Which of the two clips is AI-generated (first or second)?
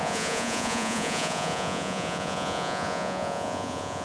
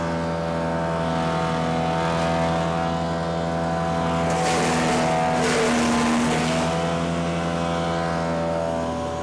first